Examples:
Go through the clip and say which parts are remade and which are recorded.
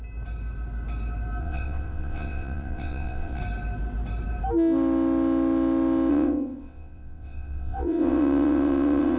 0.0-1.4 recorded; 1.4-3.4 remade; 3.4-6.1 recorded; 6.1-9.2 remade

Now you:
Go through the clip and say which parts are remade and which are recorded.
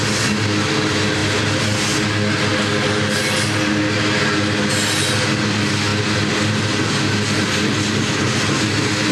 0.0-9.1 recorded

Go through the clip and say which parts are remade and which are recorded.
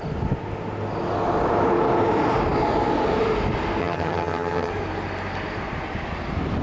0.0-3.8 recorded; 3.8-4.7 remade; 4.7-6.6 recorded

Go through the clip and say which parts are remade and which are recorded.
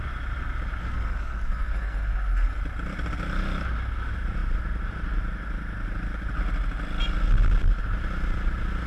0.0-0.8 recorded; 0.8-2.6 remade; 2.6-8.9 recorded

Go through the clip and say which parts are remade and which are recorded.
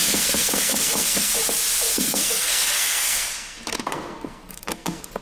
0.0-1.3 remade; 1.3-1.9 recorded; 1.9-5.2 remade